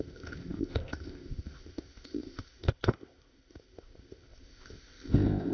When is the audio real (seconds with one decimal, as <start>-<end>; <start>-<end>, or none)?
none